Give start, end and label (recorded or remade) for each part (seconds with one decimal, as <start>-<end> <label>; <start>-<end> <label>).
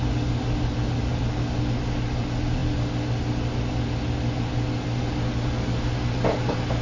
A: 0.0-6.8 recorded